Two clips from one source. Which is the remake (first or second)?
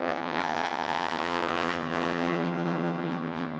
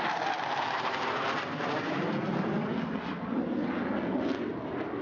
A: first